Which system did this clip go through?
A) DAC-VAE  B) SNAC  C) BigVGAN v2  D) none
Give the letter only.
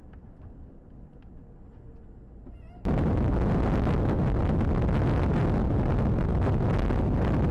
D